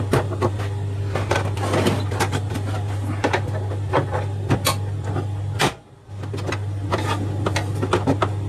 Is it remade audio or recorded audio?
recorded